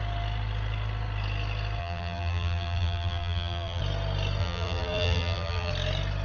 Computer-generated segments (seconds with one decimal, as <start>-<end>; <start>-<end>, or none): 1.8-3.8; 4.4-5.7